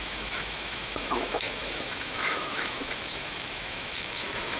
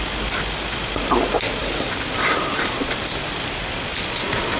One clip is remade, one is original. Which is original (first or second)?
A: second